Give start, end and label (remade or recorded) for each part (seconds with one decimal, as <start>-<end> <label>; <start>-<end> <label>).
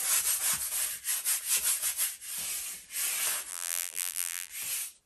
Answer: 0.0-3.5 recorded; 3.5-4.5 remade; 4.5-5.1 recorded